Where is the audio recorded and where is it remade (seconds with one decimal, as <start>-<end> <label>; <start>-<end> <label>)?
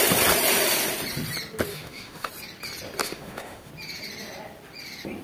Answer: 0.0-1.7 recorded; 1.7-2.3 remade; 2.3-3.0 recorded; 3.0-3.7 remade; 3.7-5.2 recorded